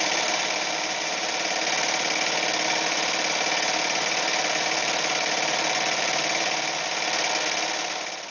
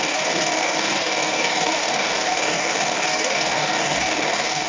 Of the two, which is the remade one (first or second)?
second